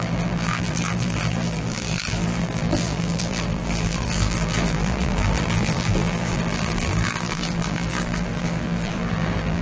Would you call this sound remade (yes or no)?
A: yes